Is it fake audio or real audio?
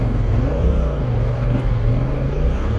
fake